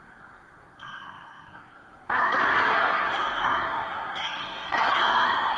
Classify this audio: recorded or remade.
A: remade